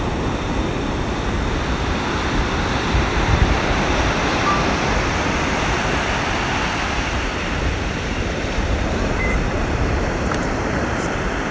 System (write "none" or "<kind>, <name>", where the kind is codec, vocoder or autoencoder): vocoder, BigVGAN v2